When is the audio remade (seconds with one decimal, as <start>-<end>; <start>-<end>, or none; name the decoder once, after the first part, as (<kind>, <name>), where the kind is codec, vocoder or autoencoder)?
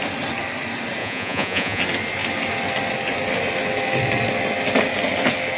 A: 1.0-1.8 (vocoder, Vocos)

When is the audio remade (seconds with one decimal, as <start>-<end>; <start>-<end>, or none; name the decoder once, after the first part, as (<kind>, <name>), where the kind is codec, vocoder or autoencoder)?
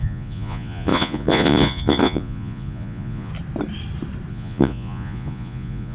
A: 0.0-3.3 (vocoder, Vocos); 4.3-5.9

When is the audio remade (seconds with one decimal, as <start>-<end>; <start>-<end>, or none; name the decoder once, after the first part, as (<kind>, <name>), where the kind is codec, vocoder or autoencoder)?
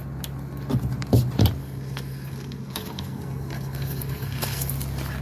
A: 1.6-4.7 (codec, SNAC)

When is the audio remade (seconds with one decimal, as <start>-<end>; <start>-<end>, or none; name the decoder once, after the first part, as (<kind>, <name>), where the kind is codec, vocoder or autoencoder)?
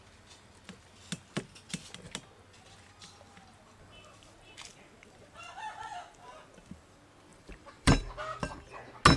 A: 7.3-8.1 (vocoder, BigVGAN v2)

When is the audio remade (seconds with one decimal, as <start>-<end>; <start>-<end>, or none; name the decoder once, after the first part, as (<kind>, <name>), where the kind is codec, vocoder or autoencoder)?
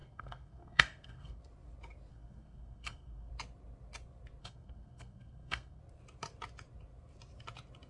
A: 0.0-1.4 (codec, SNAC); 2.1-3.3; 4.4-5.8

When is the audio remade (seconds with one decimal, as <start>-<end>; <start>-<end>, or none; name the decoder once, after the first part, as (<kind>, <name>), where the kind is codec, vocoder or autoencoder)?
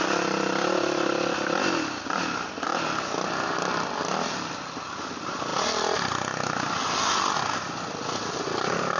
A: none